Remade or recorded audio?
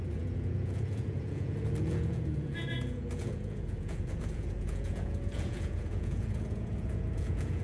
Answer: remade